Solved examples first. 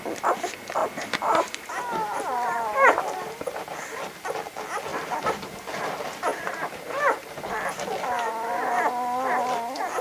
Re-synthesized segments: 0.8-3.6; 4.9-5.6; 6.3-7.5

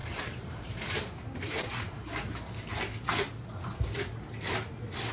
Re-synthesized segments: 0.0-3.1

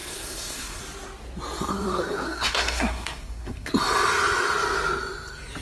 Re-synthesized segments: 0.0-0.8; 1.7-3.7

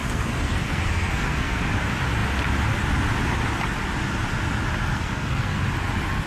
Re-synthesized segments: 0.0-1.6; 4.9-5.6

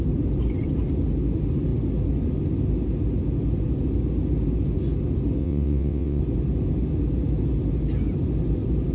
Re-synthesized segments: 5.4-6.2

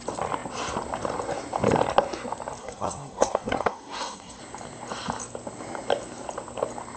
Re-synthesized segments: 2.6-4.4